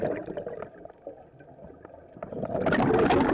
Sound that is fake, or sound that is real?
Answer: real